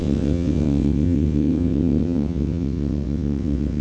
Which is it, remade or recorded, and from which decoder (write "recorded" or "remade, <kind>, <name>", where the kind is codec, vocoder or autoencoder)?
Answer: remade, vocoder, WaveNeXt